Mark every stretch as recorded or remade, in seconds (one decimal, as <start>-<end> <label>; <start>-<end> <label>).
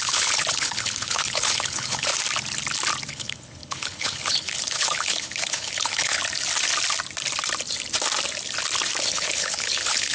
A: 0.0-2.1 remade; 2.1-3.1 recorded; 3.1-6.2 remade; 6.2-9.1 recorded; 9.1-10.1 remade